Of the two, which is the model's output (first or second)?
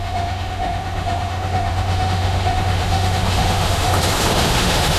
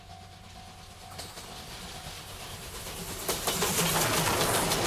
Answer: first